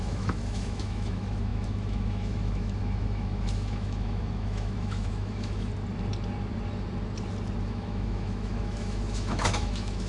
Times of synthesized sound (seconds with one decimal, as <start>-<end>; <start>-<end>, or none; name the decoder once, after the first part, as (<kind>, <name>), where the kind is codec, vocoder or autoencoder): 0.0-5.7 (autoencoder, DAC-VAE); 7.6-10.1